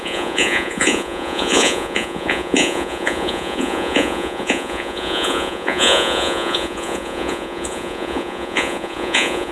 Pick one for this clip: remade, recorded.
remade